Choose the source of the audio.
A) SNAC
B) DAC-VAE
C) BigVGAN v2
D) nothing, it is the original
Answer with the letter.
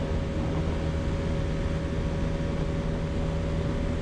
D